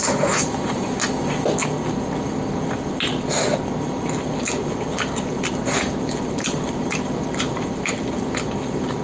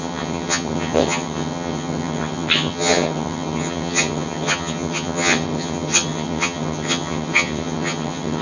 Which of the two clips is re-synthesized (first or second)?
second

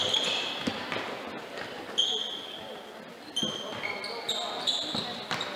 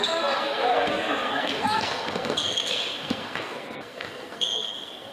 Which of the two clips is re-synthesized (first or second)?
second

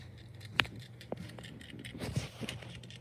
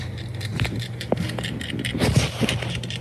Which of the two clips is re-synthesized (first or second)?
first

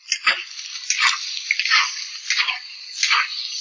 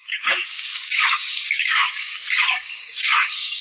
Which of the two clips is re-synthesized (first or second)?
second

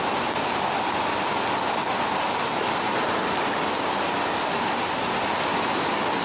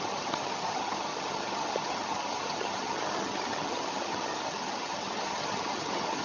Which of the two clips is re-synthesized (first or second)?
second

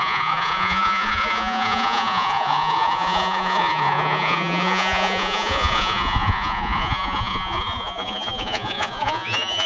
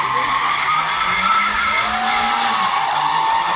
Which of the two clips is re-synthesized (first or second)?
first